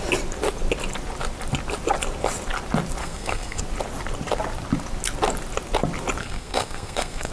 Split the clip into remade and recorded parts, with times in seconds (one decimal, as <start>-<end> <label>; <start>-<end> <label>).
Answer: 0.0-3.0 recorded; 3.0-3.6 remade; 3.6-6.2 recorded; 6.2-7.3 remade